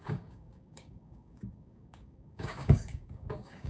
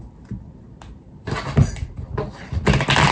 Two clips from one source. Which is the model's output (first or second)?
first